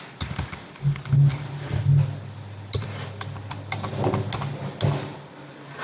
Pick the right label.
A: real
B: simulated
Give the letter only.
A